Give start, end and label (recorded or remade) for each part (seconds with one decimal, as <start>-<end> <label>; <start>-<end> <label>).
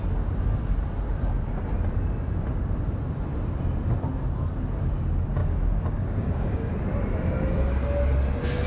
0.0-5.4 recorded; 5.4-6.7 remade; 6.7-8.7 recorded